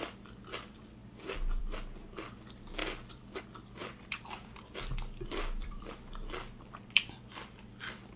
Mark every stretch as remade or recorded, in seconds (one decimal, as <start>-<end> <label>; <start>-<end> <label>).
0.0-2.8 recorded; 2.8-3.4 remade; 3.4-3.8 recorded; 3.8-7.7 remade; 7.7-8.2 recorded